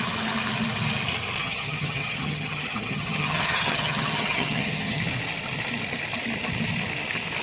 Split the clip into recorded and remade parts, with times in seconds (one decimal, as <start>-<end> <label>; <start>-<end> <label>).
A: 0.0-1.4 recorded; 1.4-5.0 remade; 5.0-7.4 recorded